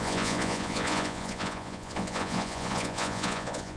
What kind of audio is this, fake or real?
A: fake